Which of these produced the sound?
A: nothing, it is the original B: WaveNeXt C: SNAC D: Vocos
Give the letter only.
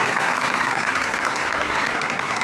C